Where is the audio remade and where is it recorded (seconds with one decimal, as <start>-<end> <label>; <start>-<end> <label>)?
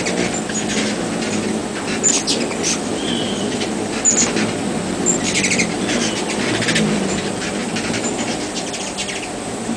0.0-9.8 recorded